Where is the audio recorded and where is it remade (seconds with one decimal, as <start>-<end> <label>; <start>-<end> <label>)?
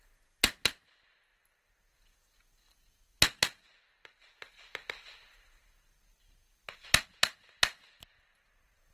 0.0-8.9 recorded